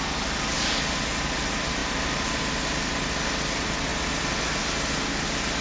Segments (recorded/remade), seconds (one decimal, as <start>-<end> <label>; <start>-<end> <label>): 0.0-1.8 recorded; 1.8-2.5 remade; 2.5-5.6 recorded